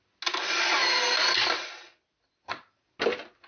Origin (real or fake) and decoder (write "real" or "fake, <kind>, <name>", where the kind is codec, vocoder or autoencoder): real